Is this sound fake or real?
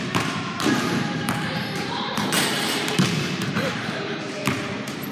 fake